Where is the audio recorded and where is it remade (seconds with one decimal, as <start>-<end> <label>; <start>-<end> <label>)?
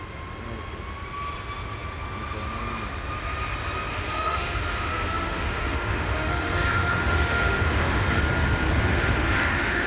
0.0-3.9 recorded; 3.9-8.2 remade; 8.2-8.9 recorded; 8.9-9.9 remade